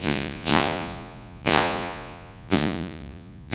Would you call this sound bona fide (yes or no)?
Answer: no